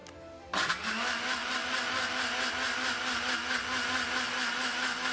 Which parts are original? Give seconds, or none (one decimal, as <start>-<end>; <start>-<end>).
0.0-5.1